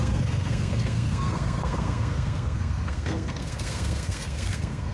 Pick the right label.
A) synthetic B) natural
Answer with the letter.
A